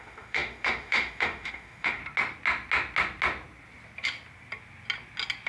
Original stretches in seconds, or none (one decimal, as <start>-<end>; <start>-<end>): 2.0-5.5